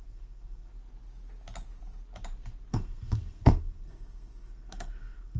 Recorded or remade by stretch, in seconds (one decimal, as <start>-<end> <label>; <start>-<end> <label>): 0.0-0.7 remade; 0.7-2.7 recorded; 2.7-5.4 remade